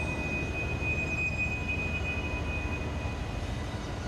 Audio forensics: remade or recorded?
recorded